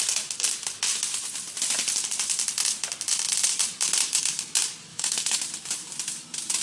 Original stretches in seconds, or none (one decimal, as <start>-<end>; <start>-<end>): 0.0-4.9; 5.4-6.6